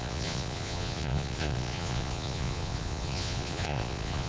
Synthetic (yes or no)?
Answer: yes